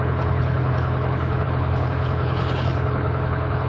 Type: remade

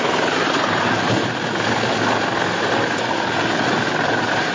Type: recorded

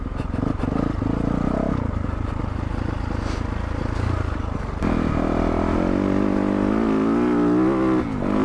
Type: recorded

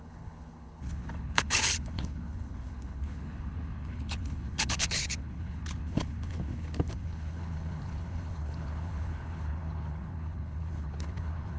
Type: remade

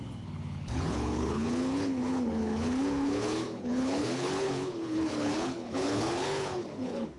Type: remade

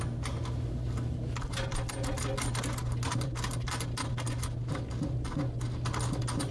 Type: recorded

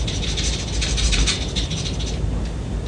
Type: recorded